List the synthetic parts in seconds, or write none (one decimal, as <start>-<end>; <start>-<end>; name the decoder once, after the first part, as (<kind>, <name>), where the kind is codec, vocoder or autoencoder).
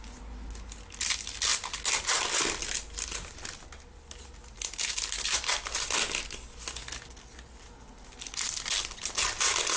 none